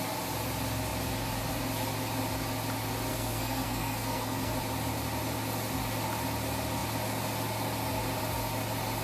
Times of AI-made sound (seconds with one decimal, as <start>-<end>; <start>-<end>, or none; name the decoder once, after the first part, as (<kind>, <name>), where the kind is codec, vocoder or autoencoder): 3.1-4.5 (codec, SNAC)